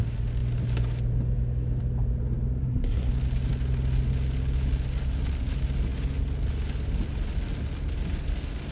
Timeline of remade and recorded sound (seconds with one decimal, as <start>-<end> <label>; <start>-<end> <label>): 0.0-2.6 recorded; 2.6-3.1 remade; 3.1-8.7 recorded

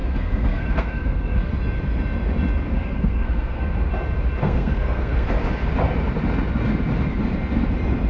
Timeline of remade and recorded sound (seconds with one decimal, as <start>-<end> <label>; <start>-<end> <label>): 0.0-1.5 remade; 1.5-2.7 recorded; 2.7-3.7 remade; 3.7-4.4 recorded; 4.4-5.3 remade; 5.3-8.1 recorded

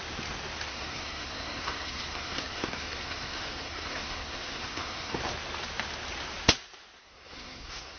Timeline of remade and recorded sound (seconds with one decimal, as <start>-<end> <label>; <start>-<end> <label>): 0.0-0.7 recorded; 0.7-5.2 remade; 5.2-7.0 recorded; 7.0-8.0 remade

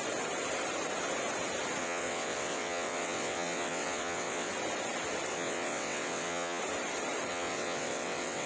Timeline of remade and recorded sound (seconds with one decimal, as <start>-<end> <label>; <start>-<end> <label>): 0.0-1.8 recorded; 1.8-4.5 remade; 4.5-5.3 recorded; 5.3-6.6 remade; 6.6-7.3 recorded; 7.3-8.5 remade